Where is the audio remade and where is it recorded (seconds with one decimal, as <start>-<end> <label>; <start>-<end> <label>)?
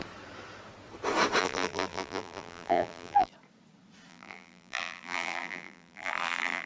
0.0-1.4 recorded; 1.4-3.3 remade; 3.3-4.1 recorded; 4.1-6.7 remade